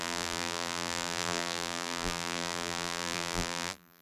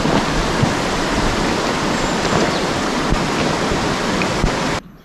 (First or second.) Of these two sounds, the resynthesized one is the first